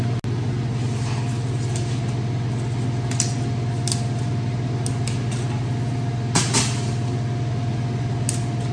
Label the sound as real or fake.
real